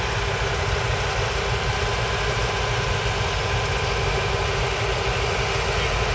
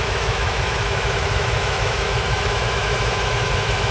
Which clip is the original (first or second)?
first